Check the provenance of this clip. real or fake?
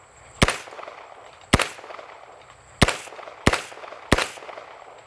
real